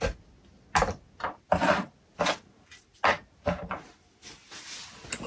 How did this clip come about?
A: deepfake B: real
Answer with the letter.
B